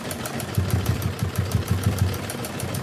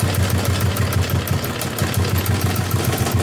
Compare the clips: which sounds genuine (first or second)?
second